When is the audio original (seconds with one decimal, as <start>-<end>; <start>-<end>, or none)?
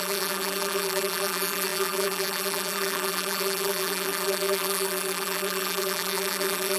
none